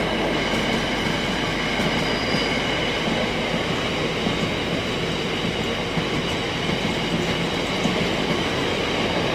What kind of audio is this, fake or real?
real